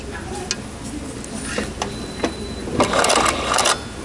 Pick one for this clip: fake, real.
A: real